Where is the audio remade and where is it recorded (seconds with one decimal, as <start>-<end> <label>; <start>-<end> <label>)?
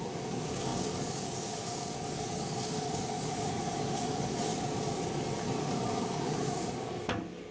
0.0-4.5 remade; 4.5-5.6 recorded; 5.6-7.5 remade